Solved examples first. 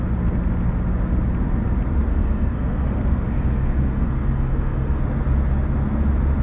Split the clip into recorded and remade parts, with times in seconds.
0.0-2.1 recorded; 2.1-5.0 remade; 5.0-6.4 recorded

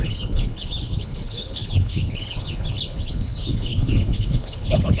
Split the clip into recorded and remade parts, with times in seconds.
0.0-5.0 remade

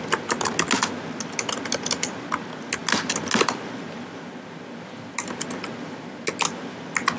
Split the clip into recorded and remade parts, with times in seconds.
0.0-7.2 recorded

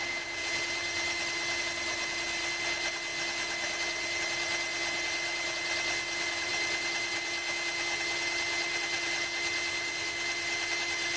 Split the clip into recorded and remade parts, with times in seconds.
0.0-11.2 recorded

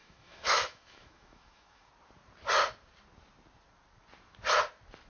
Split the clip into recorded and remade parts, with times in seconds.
0.0-1.9 remade; 1.9-5.1 recorded

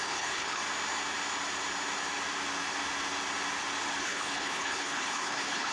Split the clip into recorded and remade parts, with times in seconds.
0.0-0.6 remade; 0.6-4.0 recorded; 4.0-5.7 remade